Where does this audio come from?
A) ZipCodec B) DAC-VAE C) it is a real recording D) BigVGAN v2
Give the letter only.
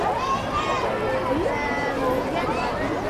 C